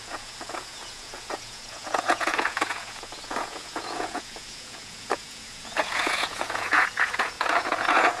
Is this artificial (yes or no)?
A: yes